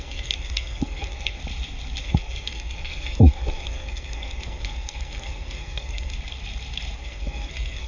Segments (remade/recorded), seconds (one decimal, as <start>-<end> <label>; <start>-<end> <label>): 0.0-1.4 remade; 1.4-2.0 recorded; 2.0-6.1 remade; 6.1-7.0 recorded; 7.0-7.9 remade